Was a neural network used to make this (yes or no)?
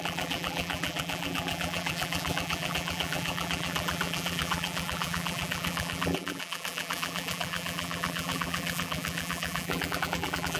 yes